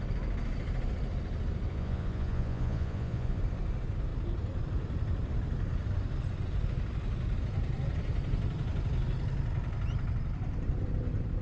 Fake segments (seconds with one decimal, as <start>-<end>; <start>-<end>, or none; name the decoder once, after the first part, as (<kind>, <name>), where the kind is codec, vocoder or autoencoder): 1.7-3.4 (vocoder, Vocos)